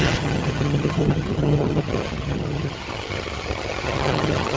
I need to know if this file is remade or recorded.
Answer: remade